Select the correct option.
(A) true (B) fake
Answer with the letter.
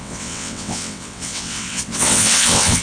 B